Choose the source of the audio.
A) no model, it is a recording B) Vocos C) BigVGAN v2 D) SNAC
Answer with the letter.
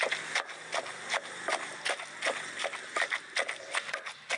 A